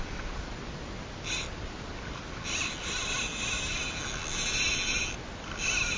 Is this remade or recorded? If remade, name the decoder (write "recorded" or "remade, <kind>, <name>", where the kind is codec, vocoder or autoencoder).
recorded